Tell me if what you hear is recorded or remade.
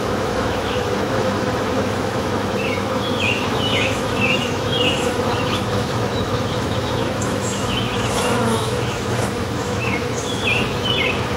remade